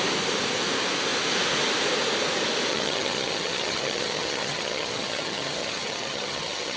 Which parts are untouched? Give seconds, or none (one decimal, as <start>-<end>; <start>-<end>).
0.0-2.7